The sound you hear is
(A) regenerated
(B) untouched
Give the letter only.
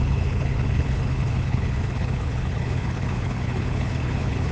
A